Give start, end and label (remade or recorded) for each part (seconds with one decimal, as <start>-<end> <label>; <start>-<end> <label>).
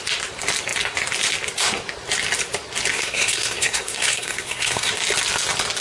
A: 0.0-2.9 recorded; 2.9-4.9 remade; 4.9-5.8 recorded